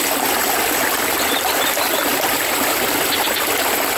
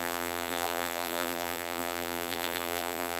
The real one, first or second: first